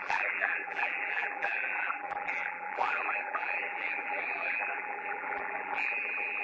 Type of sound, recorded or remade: remade